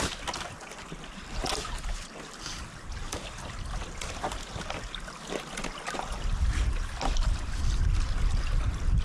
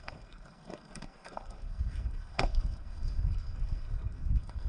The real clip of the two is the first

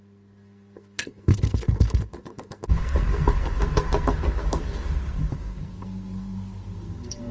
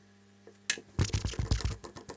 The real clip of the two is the second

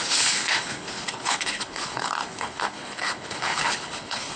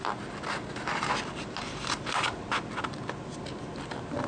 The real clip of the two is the second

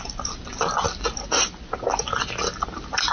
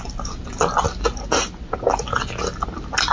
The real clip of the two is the second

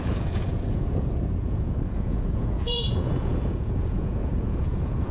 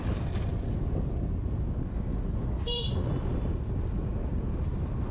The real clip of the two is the second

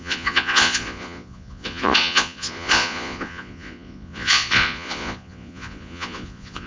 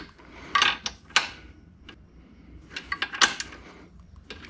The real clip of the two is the second